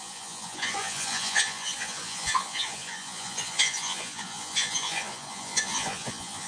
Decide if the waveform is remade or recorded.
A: remade